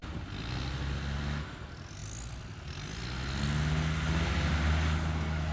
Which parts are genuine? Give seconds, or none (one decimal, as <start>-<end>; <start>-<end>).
0.0-5.5